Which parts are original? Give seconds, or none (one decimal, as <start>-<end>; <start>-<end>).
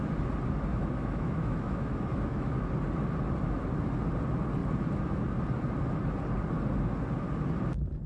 0.0-0.7; 2.7-8.1